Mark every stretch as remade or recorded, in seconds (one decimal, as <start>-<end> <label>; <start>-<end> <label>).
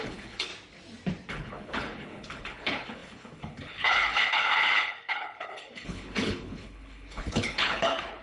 0.0-0.5 remade; 0.5-1.3 recorded; 1.3-8.2 remade